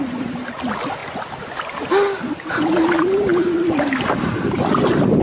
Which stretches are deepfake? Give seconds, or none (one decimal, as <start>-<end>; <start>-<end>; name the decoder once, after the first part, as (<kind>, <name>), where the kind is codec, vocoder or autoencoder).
none